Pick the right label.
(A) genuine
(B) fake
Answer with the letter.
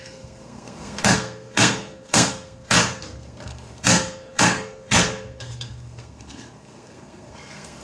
B